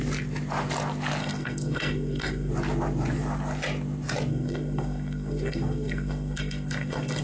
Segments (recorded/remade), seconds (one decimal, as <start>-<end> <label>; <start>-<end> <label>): 0.0-1.2 recorded; 1.2-2.5 remade; 2.5-4.3 recorded; 4.3-7.2 remade